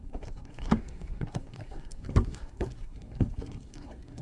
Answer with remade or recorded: remade